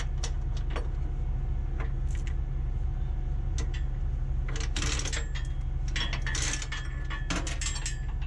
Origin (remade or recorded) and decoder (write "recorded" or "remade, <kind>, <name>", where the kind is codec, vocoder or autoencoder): recorded